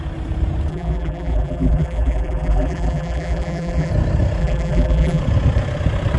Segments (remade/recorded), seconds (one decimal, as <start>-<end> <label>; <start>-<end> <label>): 0.0-0.7 recorded; 0.7-3.9 remade; 3.9-4.4 recorded; 4.4-5.2 remade; 5.2-6.2 recorded